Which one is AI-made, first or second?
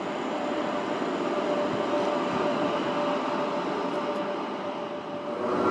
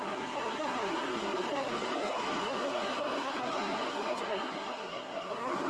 second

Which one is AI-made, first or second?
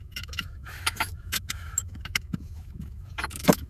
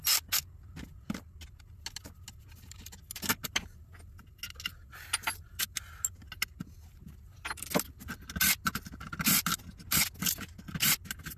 first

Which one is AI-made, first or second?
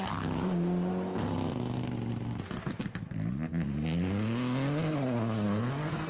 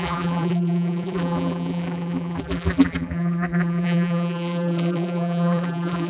second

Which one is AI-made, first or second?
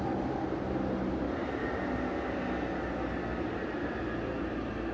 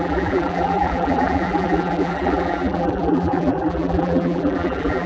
second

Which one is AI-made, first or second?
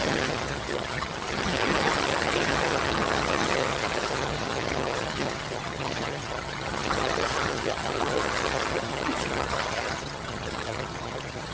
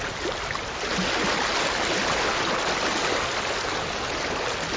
first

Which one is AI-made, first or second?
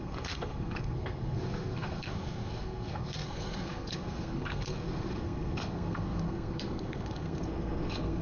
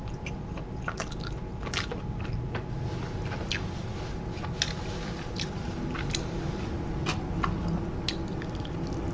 first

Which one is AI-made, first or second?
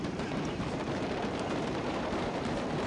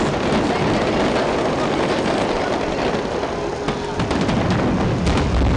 first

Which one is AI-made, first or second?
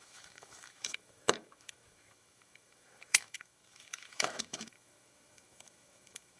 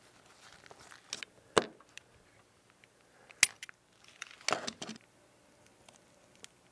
first